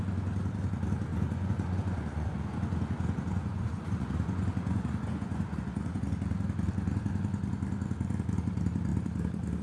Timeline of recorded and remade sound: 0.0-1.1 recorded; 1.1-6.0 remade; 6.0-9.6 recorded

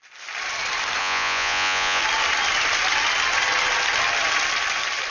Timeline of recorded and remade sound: 0.0-1.0 recorded; 1.0-2.0 remade; 2.0-5.1 recorded